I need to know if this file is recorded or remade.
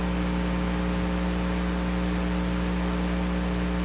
recorded